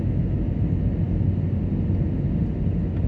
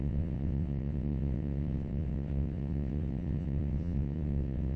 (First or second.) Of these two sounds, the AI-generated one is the second